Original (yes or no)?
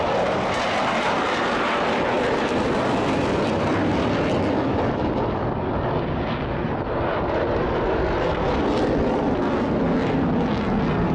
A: yes